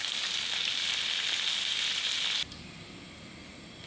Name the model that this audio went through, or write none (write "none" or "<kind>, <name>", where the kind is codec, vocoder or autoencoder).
none